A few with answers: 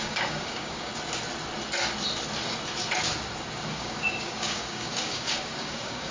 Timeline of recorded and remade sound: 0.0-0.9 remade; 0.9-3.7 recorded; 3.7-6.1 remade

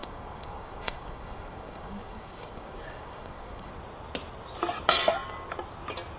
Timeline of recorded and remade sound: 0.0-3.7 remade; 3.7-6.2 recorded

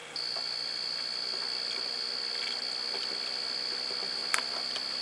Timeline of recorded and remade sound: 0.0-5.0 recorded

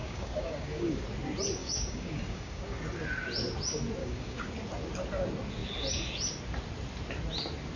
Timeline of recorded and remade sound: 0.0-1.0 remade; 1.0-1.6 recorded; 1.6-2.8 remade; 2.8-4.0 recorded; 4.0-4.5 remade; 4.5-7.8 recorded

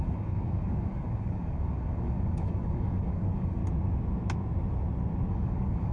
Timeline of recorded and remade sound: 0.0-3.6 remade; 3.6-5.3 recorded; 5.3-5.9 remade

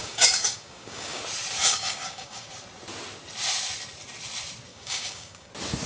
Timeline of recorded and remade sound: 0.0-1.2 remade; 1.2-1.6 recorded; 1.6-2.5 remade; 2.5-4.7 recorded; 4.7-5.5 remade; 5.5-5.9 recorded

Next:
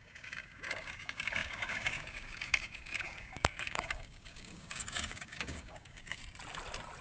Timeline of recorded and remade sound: 0.0-6.2 remade; 6.2-7.0 recorded

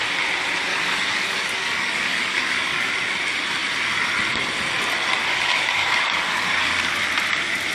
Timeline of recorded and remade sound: 0.0-0.7 recorded; 0.7-2.9 remade; 2.9-5.2 recorded; 5.2-7.0 remade; 7.0-7.7 recorded